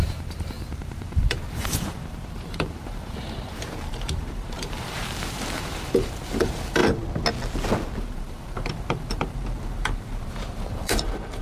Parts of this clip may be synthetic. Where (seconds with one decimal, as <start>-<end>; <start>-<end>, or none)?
0.0-6.8; 8.0-11.4